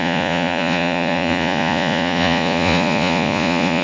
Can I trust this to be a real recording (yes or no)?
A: no